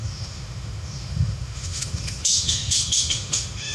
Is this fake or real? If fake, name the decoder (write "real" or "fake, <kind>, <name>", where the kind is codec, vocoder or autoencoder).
fake, autoencoder, DAC-VAE